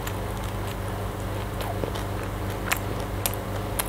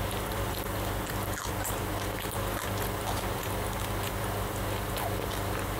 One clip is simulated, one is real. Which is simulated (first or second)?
second